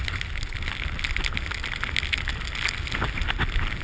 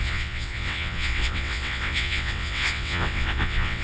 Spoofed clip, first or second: second